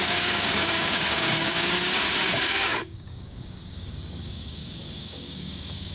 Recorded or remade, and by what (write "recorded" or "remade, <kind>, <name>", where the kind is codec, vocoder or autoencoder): remade, codec, DAC